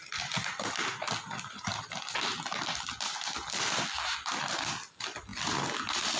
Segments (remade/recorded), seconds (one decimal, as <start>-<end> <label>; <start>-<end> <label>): 0.0-6.2 recorded